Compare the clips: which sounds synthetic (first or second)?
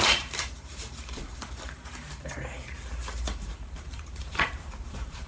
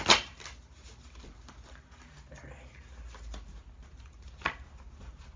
first